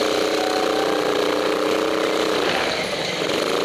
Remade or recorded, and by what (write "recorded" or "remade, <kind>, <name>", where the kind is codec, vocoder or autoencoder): recorded